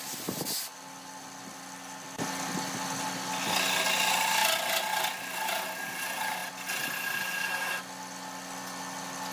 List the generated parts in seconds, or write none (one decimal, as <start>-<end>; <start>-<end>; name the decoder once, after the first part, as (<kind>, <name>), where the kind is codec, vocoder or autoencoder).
none